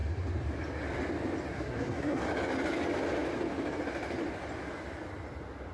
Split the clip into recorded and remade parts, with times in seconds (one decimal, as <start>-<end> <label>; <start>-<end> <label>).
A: 0.0-1.5 recorded; 1.5-2.2 remade; 2.2-5.7 recorded